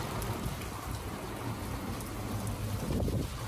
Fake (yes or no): no